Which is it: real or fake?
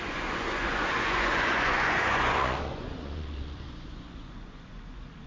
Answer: fake